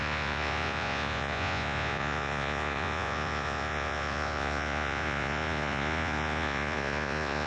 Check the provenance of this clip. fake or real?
fake